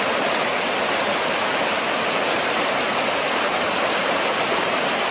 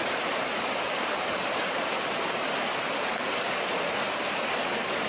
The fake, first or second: second